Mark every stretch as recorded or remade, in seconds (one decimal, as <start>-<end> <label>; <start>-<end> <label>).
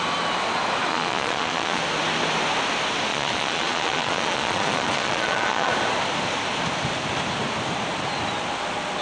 0.0-0.9 recorded; 0.9-1.8 remade; 1.8-3.1 recorded; 3.1-5.7 remade; 5.7-9.0 recorded